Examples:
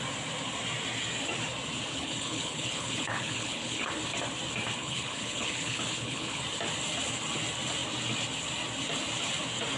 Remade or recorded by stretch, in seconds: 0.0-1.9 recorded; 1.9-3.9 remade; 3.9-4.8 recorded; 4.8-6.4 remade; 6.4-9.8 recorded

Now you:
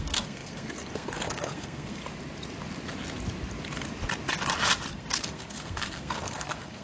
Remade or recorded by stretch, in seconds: 0.0-2.0 remade; 2.0-4.9 recorded; 4.9-6.8 remade